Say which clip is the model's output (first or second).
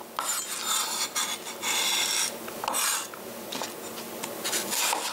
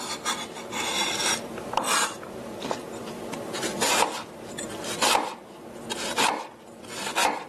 second